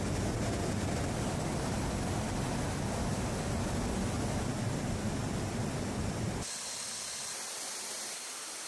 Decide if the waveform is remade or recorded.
recorded